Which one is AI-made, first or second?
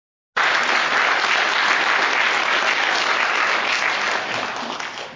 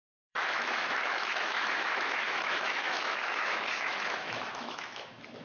second